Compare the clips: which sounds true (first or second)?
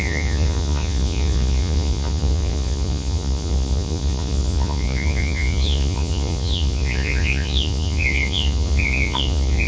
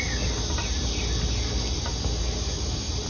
second